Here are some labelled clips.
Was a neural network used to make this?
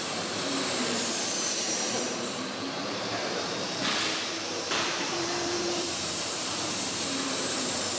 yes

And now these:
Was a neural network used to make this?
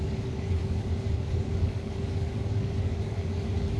yes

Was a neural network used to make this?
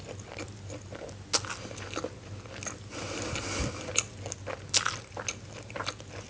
no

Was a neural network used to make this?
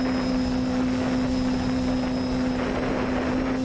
no